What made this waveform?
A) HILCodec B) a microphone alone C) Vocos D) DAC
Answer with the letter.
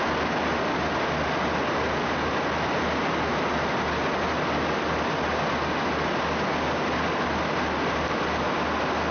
B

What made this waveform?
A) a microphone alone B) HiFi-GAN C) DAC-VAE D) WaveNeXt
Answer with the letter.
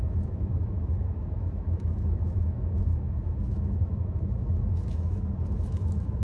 C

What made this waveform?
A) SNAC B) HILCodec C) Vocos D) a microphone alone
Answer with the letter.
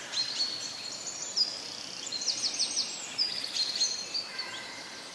D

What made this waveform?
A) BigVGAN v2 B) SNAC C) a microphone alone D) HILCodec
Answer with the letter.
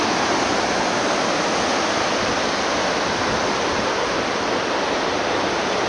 C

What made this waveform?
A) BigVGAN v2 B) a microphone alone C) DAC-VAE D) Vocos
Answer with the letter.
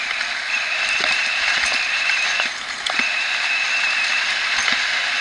B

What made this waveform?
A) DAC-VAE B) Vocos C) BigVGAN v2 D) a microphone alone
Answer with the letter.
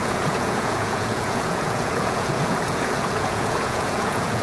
B